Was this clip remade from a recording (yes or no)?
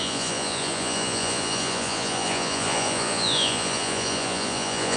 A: yes